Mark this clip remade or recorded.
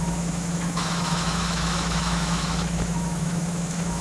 remade